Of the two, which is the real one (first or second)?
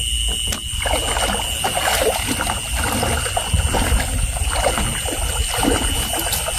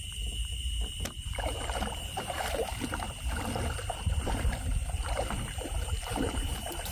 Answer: first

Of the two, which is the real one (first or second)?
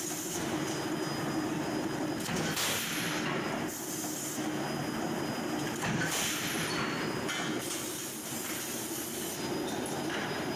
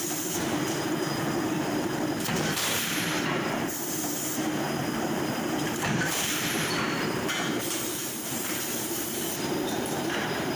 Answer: first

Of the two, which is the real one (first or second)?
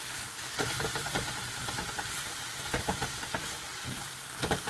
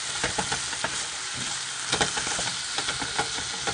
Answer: second